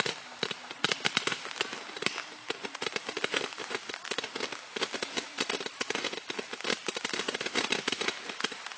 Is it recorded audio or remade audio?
recorded